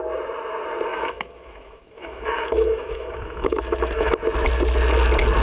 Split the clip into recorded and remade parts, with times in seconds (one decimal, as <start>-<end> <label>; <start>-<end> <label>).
0.0-0.9 recorded; 0.9-4.1 remade; 4.1-5.4 recorded